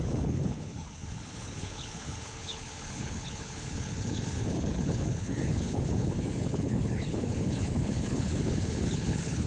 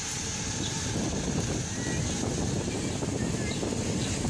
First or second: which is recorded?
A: second